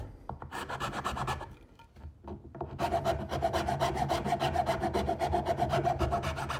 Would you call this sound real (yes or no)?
yes